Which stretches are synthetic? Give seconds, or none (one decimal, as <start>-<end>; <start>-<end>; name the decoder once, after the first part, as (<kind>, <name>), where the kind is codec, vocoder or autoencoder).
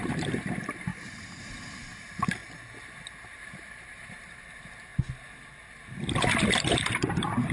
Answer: 0.0-2.4 (vocoder, BigVGAN v2); 3.3-4.9; 6.7-7.5